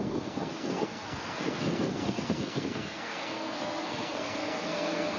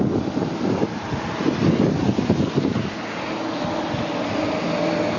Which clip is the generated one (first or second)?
first